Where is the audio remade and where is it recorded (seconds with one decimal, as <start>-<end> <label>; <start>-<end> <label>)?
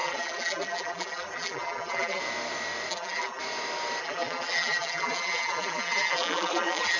0.0-2.2 remade; 2.2-2.9 recorded; 2.9-3.4 remade; 3.4-4.0 recorded; 4.0-7.0 remade